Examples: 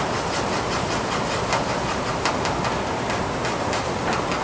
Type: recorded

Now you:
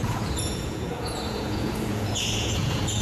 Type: remade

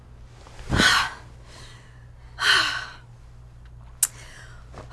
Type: recorded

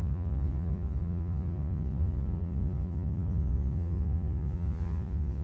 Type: remade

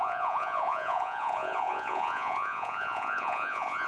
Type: remade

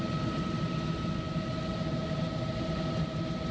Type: recorded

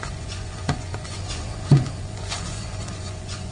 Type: remade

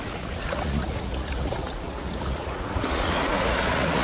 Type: remade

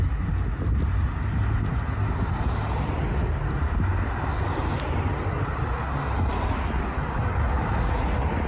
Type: recorded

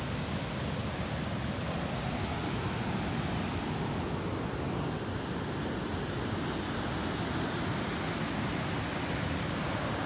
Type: recorded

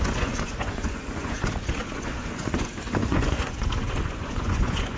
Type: remade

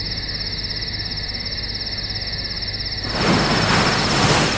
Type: recorded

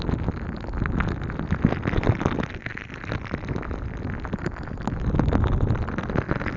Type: recorded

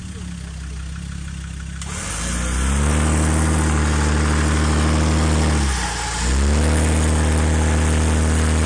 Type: recorded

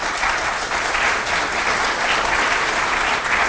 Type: recorded